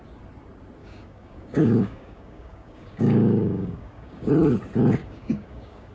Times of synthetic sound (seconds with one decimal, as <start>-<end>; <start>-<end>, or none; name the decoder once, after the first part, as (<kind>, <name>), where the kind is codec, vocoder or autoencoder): 0.8-4.3 (codec, DAC); 5.0-5.9